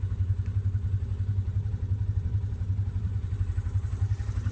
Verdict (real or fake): fake